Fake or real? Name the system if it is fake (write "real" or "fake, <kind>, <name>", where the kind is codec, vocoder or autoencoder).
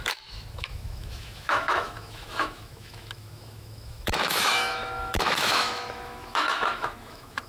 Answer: fake, autoencoder, DAC-VAE